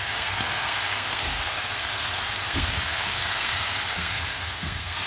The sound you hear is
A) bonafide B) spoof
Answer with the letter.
B